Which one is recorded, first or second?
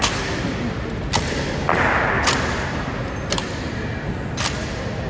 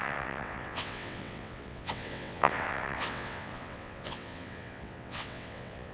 first